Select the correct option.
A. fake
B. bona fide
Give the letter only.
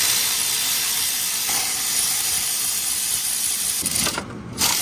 B